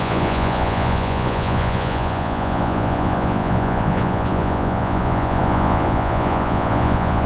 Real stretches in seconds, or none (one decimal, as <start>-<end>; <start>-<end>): none